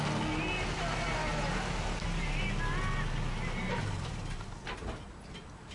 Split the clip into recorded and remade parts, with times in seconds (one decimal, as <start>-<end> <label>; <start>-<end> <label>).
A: 0.0-5.7 recorded